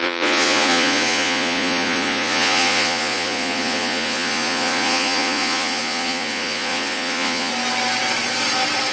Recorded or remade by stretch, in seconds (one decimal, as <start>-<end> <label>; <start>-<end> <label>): 0.0-7.5 remade; 7.5-8.9 recorded